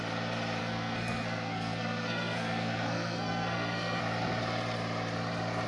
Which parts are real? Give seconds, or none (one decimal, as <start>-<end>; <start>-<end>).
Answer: 0.0-0.6; 4.0-5.7